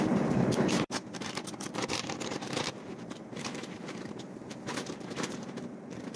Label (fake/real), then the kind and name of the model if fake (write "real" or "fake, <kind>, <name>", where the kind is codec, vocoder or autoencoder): fake, vocoder, BigVGAN v2